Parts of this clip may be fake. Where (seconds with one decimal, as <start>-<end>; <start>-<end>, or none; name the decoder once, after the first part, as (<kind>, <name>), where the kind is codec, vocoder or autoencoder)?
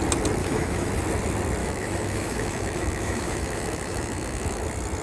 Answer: 0.4-0.9 (autoencoder, DAC-VAE); 1.6-4.6